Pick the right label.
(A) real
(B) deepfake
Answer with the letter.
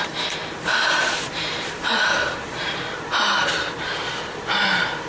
B